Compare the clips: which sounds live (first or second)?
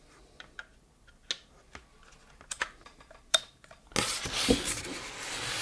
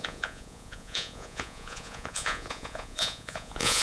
first